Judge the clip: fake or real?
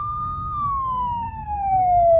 fake